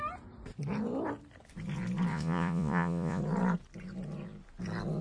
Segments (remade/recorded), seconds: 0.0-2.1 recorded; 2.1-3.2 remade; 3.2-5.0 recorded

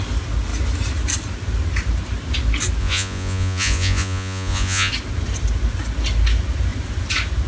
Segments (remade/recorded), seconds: 0.0-2.8 recorded; 2.8-4.9 remade; 4.9-7.5 recorded

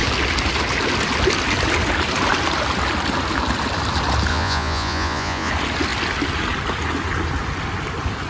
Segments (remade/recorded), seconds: 0.0-4.3 recorded; 4.3-5.5 remade; 5.5-8.3 recorded

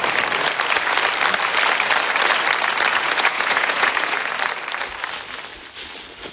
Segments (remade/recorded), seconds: 0.0-2.9 recorded; 2.9-4.3 remade; 4.3-6.3 recorded

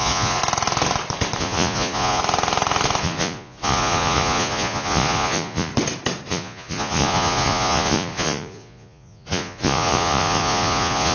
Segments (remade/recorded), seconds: 0.0-0.4 remade; 0.4-1.4 recorded; 1.4-2.2 remade; 2.2-3.0 recorded; 3.0-5.7 remade; 5.7-6.3 recorded; 6.3-11.1 remade

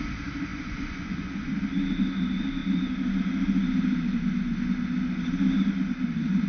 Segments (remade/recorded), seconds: 0.0-0.5 recorded; 0.5-1.5 remade; 1.5-6.5 recorded

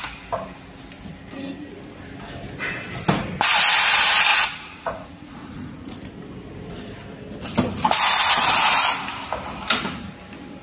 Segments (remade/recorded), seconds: 0.0-4.3 recorded; 4.3-6.0 remade; 6.0-10.6 recorded